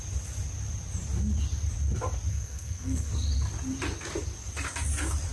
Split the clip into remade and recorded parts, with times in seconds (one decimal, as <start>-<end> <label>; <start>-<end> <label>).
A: 0.0-2.3 recorded; 2.3-3.1 remade; 3.1-5.3 recorded